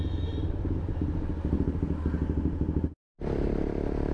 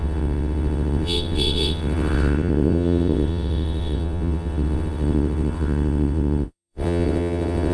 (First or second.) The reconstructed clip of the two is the second